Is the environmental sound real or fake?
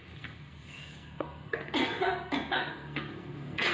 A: fake